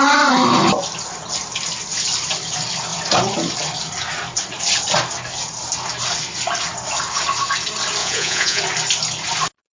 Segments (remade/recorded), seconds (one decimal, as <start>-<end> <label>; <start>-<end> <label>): 0.0-8.0 recorded; 8.0-8.6 remade; 8.6-9.7 recorded